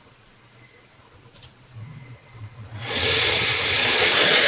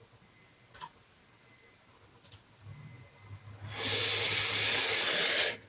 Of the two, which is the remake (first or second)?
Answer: first